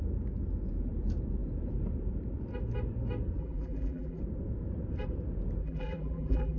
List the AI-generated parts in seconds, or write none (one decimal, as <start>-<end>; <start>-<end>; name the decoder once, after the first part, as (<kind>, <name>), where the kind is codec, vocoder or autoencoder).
3.4-4.2 (vocoder, BigVGAN v2); 5.6-6.6